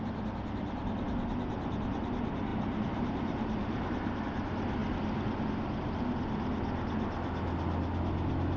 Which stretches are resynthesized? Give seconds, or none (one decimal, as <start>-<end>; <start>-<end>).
2.5-4.2